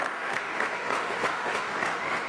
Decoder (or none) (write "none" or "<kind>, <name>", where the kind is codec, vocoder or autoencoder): autoencoder, DAC-VAE